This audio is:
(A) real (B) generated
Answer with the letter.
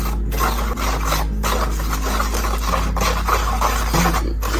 A